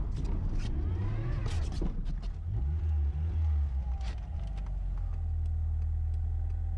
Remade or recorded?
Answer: recorded